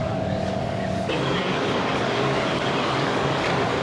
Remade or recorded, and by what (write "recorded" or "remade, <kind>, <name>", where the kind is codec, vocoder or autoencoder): remade, codec, DAC